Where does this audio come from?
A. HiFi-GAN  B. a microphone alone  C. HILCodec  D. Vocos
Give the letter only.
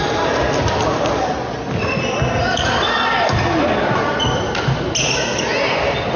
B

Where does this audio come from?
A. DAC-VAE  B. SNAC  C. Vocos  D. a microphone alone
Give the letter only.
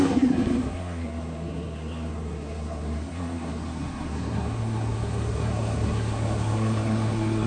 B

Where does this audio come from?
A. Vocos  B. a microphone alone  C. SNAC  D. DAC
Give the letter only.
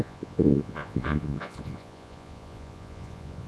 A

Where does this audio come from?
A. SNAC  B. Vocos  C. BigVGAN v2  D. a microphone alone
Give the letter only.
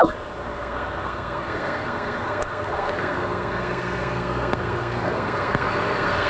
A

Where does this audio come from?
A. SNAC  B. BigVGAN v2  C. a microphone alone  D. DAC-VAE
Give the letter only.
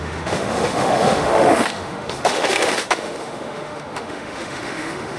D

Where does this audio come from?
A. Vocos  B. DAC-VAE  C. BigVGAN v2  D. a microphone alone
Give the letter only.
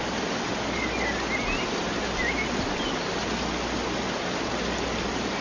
D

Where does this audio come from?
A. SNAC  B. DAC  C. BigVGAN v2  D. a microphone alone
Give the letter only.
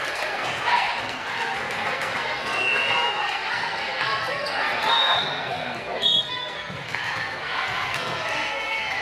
A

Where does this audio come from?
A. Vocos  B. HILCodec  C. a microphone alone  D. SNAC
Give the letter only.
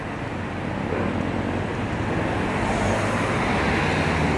C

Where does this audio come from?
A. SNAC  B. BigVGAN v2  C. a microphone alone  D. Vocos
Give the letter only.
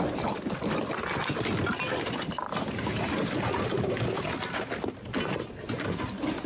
C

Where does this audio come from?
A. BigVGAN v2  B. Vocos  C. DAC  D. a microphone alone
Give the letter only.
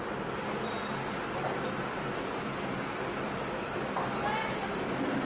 D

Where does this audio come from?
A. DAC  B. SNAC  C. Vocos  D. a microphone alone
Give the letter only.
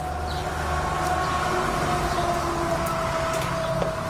D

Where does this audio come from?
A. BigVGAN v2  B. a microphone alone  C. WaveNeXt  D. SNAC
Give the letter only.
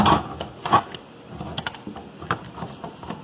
B